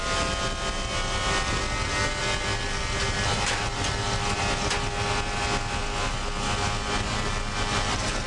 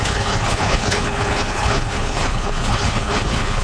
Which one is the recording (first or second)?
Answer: first